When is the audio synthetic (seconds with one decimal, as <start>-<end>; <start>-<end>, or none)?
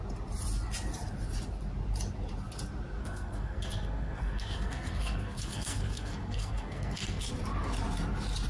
3.0-7.3